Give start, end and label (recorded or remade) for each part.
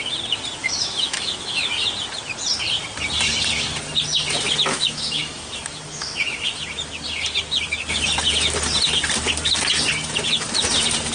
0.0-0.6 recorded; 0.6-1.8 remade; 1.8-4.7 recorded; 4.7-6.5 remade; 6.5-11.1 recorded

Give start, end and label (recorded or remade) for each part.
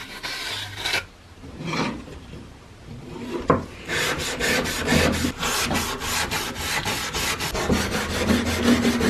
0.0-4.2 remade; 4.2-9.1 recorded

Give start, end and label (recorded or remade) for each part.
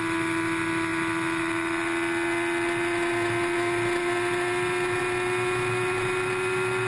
0.0-6.9 recorded